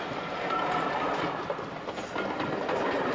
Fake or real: real